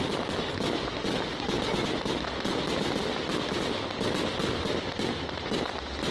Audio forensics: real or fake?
real